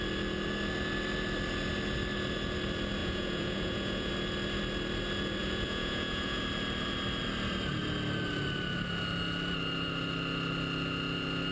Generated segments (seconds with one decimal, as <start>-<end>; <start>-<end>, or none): 3.0-4.1; 5.4-6.4